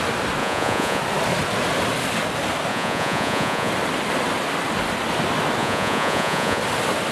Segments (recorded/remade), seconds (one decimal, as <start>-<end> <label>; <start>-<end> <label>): 0.0-0.4 recorded; 0.4-1.0 remade; 1.0-2.7 recorded; 2.7-3.7 remade; 3.7-5.6 recorded; 5.6-6.6 remade; 6.6-7.1 recorded